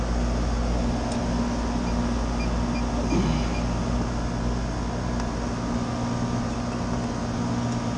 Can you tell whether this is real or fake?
real